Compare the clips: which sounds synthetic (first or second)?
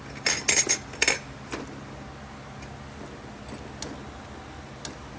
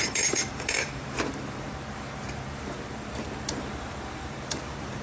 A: second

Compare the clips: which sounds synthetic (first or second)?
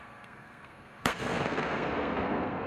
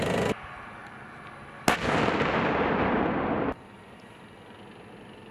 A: first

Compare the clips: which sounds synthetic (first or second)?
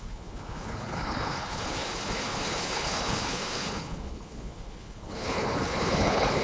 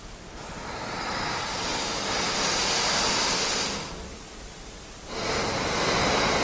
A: first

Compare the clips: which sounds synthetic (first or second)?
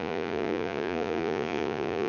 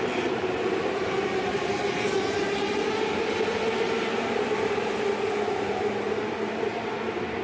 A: first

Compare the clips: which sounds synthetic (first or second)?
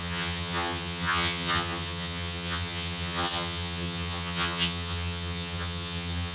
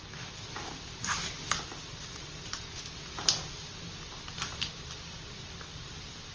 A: first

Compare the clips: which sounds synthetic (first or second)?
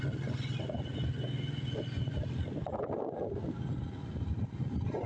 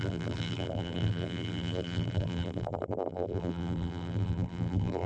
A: second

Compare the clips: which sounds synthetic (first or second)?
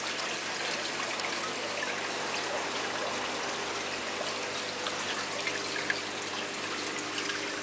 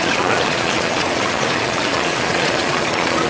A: second